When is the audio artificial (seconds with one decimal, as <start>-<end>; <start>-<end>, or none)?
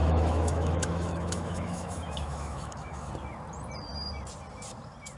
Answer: 0.0-3.1